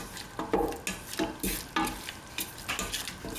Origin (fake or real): real